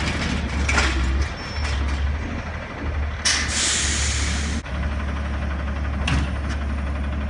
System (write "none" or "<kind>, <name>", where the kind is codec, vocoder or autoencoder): none